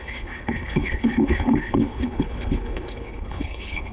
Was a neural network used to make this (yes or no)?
yes